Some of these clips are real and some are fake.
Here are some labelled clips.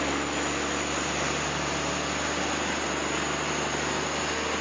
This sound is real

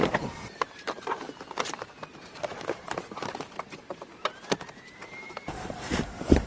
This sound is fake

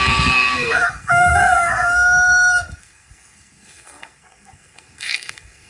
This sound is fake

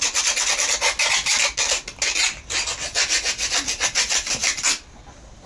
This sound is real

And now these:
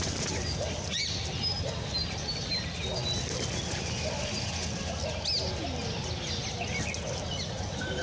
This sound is real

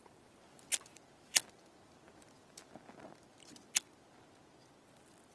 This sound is real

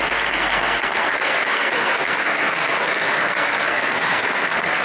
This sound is fake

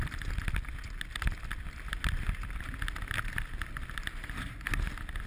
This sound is real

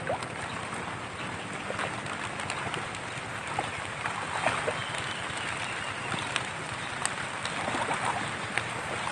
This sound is real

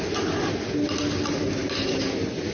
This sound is real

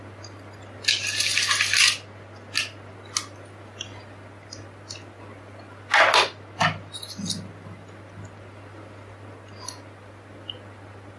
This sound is real